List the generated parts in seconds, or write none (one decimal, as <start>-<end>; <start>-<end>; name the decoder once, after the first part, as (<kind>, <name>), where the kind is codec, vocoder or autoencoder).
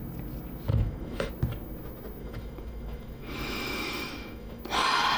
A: 0.7-1.3 (autoencoder, DAC-VAE); 2.2-4.6